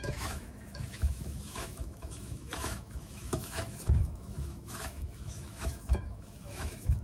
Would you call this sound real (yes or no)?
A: no